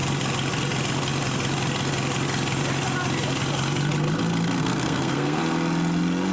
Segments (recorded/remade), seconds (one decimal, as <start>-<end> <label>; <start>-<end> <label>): 0.0-4.6 recorded; 4.6-5.4 remade; 5.4-6.3 recorded